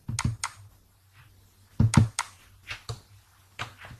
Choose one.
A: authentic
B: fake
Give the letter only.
A